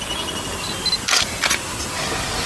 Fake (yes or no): no